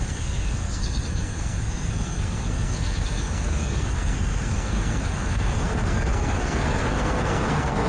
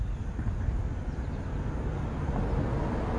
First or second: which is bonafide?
second